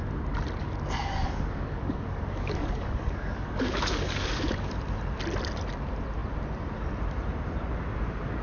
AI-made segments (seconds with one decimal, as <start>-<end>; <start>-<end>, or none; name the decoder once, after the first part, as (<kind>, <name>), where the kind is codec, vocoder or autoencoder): 0.6-4.7 (codec, DAC)